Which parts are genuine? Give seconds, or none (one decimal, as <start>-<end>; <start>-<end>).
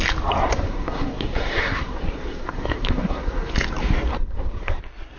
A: 0.0-0.4; 3.5-4.1; 4.8-5.2